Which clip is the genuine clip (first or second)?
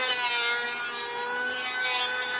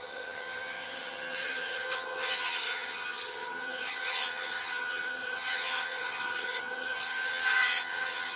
first